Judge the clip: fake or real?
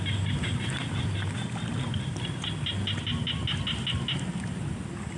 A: real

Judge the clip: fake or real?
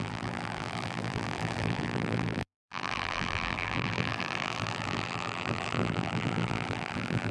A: fake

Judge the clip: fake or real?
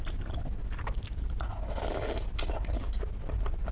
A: real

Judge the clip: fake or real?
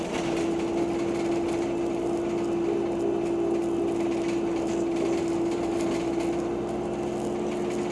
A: real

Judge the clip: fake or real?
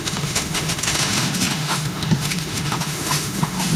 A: fake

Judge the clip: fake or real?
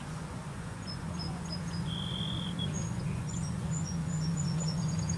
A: fake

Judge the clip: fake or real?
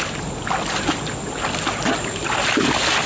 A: real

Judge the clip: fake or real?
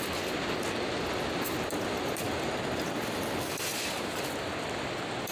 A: real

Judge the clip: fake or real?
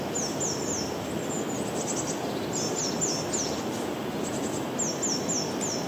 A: real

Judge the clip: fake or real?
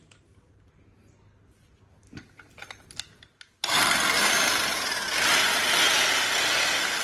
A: real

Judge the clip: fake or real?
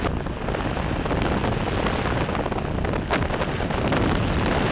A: real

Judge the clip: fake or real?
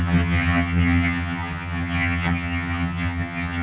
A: fake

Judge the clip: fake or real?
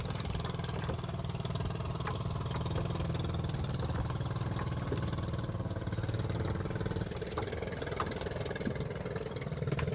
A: real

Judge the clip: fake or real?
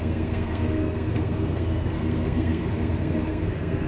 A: fake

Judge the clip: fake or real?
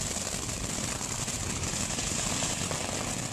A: real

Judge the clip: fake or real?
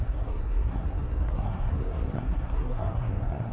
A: fake